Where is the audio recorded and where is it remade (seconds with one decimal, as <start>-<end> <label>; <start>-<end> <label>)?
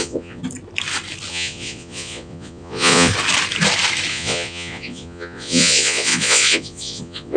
0.0-0.4 remade; 0.4-1.3 recorded; 1.3-3.1 remade; 3.1-4.1 recorded; 4.1-7.4 remade